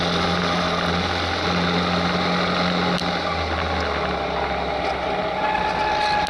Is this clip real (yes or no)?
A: yes